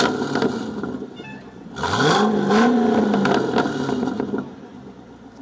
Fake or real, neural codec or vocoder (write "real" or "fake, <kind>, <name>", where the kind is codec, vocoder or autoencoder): real